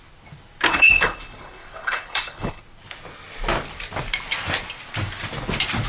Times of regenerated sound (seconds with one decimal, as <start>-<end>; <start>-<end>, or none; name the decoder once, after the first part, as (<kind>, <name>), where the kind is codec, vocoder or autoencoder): 0.7-2.6 (codec, HILCodec)